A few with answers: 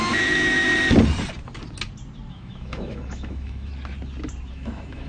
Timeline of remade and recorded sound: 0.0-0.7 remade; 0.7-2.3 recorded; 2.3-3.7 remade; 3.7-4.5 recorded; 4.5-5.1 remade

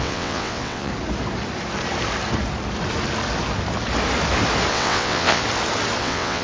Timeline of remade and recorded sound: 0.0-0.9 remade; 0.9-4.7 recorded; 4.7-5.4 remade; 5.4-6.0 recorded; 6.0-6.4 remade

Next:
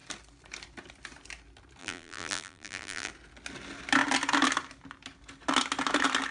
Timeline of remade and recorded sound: 0.0-1.8 recorded; 1.8-3.1 remade; 3.1-6.3 recorded

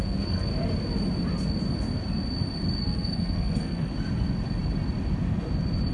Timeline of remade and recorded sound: 0.0-0.5 remade; 0.5-2.8 recorded; 2.8-3.9 remade; 3.9-5.9 recorded

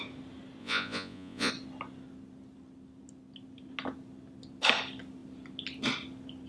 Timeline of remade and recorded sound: 0.0-0.6 recorded; 0.6-1.5 remade; 1.5-6.5 recorded

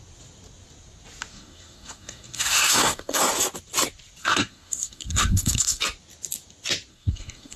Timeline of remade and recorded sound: 0.0-1.3 recorded; 1.3-3.2 remade; 3.2-4.2 recorded; 4.2-5.8 remade; 5.8-6.9 recorded; 6.9-7.6 remade

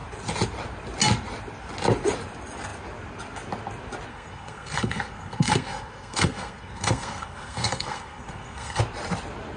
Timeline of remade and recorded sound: 0.0-4.1 recorded; 4.1-8.8 remade; 8.8-9.6 recorded

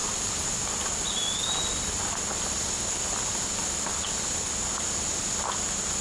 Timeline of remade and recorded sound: 0.0-6.0 recorded